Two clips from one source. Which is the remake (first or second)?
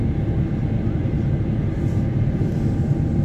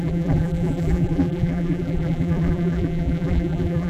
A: second